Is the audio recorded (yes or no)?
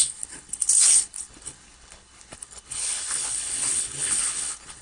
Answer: no